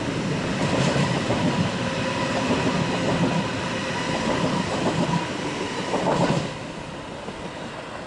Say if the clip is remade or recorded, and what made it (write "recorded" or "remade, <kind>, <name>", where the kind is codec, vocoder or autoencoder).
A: recorded